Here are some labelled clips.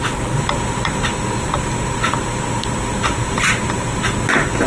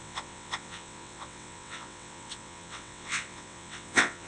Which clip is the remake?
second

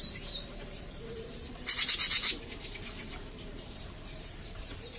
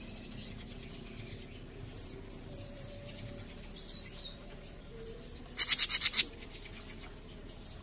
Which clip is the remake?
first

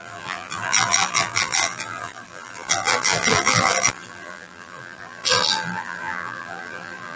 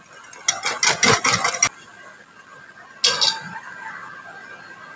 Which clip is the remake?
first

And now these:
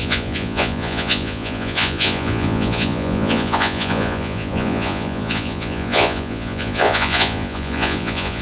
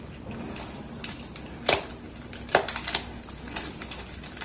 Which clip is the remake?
first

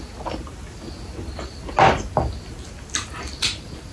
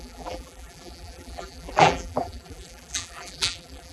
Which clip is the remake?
second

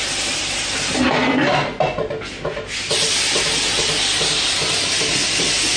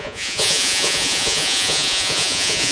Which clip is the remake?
second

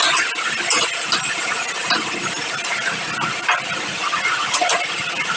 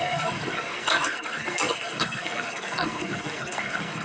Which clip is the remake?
second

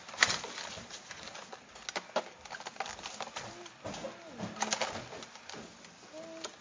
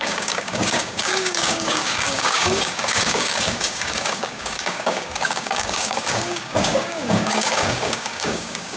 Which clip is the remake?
second